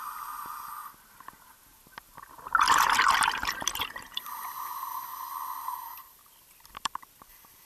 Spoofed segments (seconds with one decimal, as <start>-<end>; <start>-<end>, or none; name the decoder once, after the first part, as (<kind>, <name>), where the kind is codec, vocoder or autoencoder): 0.0-0.8 (vocoder, BigVGAN v2); 2.7-5.1; 6.2-7.7